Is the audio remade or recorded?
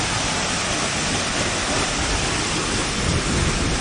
recorded